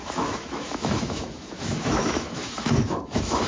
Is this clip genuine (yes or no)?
no